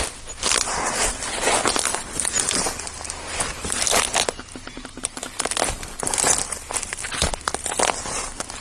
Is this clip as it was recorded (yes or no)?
yes